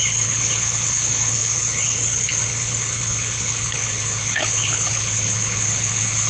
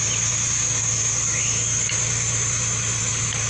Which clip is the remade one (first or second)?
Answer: first